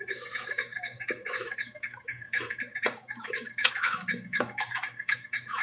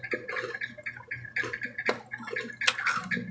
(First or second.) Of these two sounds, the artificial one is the first